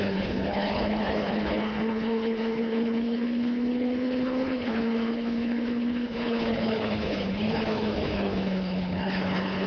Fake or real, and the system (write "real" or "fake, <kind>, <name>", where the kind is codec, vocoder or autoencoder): fake, codec, HILCodec